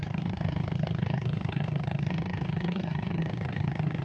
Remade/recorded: remade